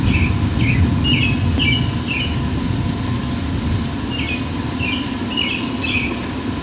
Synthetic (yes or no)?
no